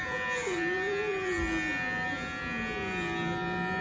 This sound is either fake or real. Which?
real